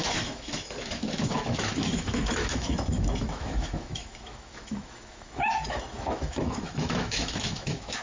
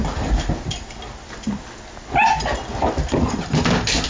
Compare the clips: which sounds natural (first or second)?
second